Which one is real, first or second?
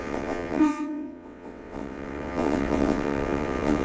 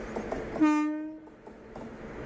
second